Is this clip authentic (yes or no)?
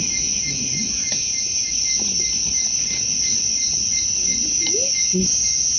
yes